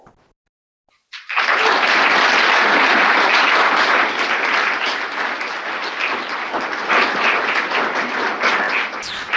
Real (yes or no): yes